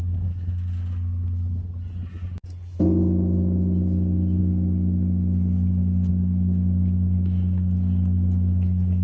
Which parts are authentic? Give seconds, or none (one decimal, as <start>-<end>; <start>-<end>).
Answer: 0.0-9.0